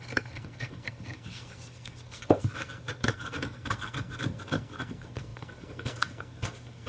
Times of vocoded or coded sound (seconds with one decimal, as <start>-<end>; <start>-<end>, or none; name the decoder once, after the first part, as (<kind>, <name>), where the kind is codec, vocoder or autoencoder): 0.0-6.9 (codec, SNAC)